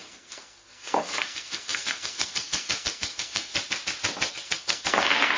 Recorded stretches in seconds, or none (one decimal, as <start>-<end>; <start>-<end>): 3.5-4.3